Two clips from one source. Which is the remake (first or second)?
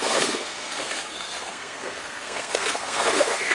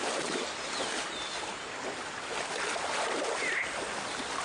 first